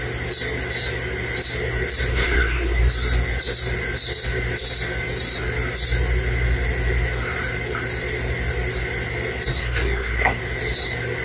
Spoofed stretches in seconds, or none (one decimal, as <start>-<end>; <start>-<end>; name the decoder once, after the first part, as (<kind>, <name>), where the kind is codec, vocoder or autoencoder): 2.1-2.8 (codec, SNAC); 9.5-10.4